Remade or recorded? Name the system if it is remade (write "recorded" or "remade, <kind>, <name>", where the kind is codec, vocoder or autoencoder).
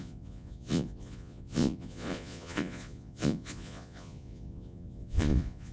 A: remade, vocoder, Vocos